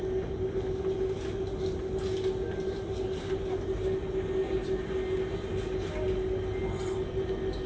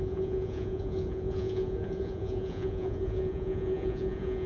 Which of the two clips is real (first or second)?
first